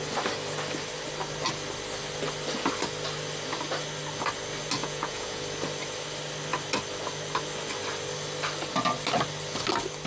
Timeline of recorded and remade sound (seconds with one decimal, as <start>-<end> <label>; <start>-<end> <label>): 0.0-4.8 recorded; 4.8-5.4 remade; 5.4-10.1 recorded